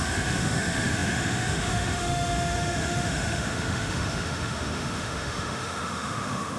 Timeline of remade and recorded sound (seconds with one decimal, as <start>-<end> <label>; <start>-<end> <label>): 0.0-6.6 remade